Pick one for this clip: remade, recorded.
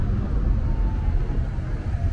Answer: recorded